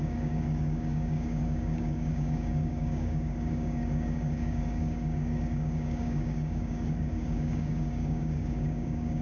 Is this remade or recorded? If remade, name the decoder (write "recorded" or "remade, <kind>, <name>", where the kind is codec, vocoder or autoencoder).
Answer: remade, codec, DAC